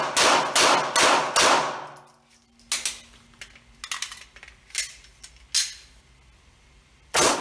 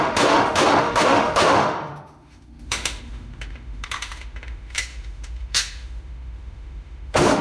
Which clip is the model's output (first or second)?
second